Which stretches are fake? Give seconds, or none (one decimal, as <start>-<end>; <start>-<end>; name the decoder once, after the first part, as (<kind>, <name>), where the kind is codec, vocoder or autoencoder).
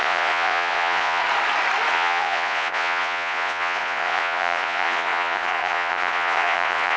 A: 0.0-1.2 (vocoder, Vocos); 1.9-7.0